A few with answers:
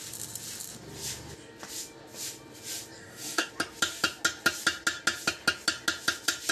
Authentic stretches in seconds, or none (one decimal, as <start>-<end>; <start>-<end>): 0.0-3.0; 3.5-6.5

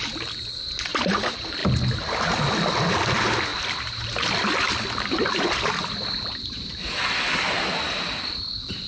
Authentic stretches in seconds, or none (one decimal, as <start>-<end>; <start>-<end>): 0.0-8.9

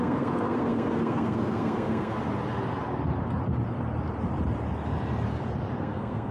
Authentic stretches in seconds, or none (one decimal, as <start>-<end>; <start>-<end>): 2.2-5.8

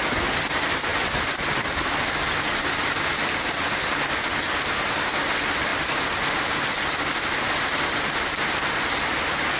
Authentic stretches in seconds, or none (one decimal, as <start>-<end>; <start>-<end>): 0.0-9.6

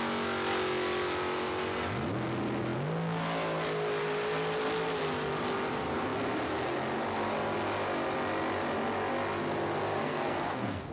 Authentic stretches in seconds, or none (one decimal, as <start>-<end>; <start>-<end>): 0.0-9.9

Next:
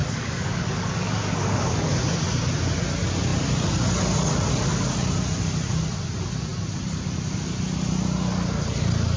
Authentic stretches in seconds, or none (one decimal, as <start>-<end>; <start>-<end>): 1.9-9.2